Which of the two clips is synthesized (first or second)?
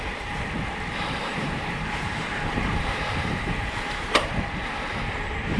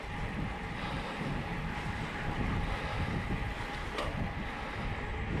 first